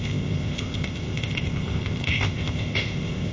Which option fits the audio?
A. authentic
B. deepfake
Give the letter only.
B